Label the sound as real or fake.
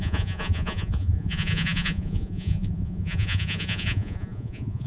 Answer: fake